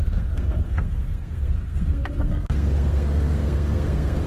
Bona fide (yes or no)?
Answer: no